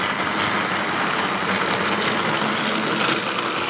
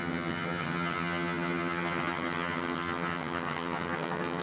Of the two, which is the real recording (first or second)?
first